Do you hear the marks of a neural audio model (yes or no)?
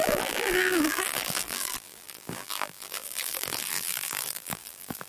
yes